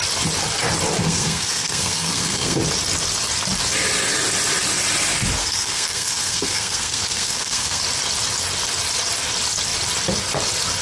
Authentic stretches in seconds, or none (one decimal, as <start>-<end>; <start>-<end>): 0.0-1.0; 2.6-5.4; 7.8-10.8